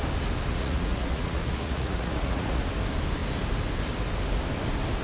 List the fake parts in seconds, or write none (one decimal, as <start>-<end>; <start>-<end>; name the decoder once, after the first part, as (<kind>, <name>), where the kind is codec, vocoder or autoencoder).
0.5-2.6 (vocoder, Vocos)